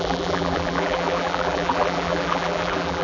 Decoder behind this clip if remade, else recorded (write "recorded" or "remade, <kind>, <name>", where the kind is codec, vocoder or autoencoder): remade, vocoder, BigVGAN v2